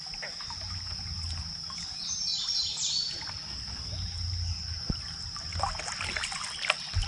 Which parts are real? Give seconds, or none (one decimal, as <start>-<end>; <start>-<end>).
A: 0.0-7.1